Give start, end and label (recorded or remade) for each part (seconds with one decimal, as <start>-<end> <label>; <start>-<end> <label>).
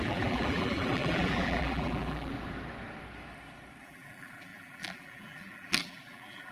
0.0-2.3 remade; 2.3-3.8 recorded; 3.8-6.5 remade